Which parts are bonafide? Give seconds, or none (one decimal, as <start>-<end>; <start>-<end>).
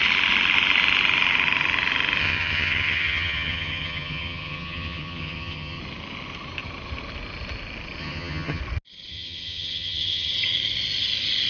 0.0-2.2; 5.8-8.0; 8.6-9.1; 10.3-11.5